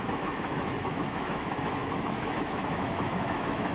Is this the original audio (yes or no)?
no